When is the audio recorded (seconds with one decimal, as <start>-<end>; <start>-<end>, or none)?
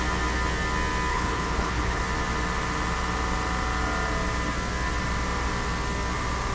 0.0-1.1; 2.0-6.5